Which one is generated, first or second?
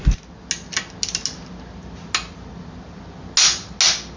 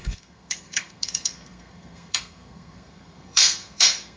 second